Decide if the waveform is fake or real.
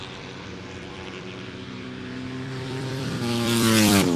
fake